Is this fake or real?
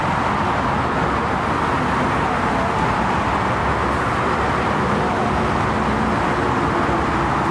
real